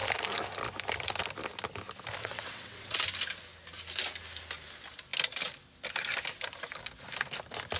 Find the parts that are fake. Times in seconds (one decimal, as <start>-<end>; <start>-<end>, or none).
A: 2.2-3.0